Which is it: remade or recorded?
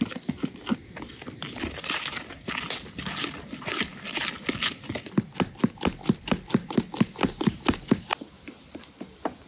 recorded